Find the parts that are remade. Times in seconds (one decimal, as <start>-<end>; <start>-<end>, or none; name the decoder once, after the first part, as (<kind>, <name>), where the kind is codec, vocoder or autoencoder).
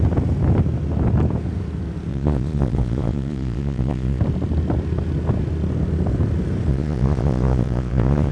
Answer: 2.1-4.2 (vocoder, Vocos); 6.7-8.3